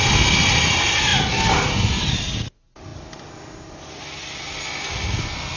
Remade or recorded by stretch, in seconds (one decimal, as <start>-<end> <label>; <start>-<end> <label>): 0.0-5.6 recorded